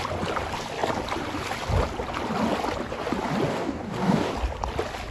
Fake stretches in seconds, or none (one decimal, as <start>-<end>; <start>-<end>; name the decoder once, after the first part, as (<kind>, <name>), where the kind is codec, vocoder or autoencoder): 3.5-4.3 (codec, DAC)